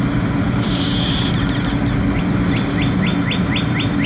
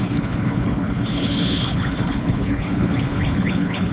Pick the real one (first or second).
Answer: first